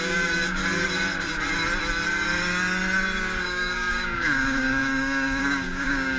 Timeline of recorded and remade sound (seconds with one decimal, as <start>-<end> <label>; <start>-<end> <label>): 0.0-0.6 remade; 0.6-3.4 recorded; 3.4-6.2 remade

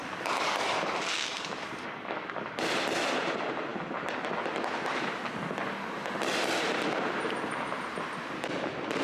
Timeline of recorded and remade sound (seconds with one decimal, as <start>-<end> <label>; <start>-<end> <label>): 0.0-2.6 remade; 2.6-9.0 recorded

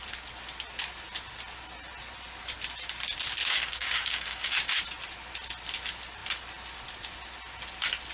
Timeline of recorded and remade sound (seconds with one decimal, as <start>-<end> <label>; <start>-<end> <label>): 0.0-3.4 recorded; 3.4-4.8 remade; 4.8-8.1 recorded

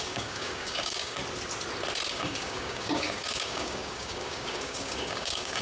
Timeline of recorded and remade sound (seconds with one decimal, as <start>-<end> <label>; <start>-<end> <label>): 0.0-1.2 remade; 1.2-2.1 recorded; 2.1-5.6 remade

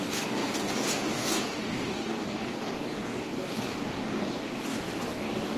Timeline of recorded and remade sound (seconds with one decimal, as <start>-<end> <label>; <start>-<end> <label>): 0.0-5.6 remade

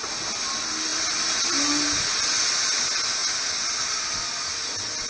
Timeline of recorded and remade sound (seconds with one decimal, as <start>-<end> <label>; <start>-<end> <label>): 0.0-5.1 recorded

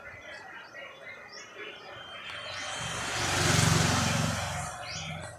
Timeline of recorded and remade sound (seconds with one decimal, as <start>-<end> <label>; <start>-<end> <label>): 0.0-5.4 recorded